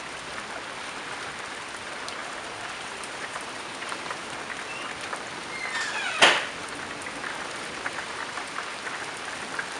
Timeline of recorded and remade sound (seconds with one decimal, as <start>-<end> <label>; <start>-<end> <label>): 0.0-2.2 recorded; 2.2-4.2 remade; 4.2-9.8 recorded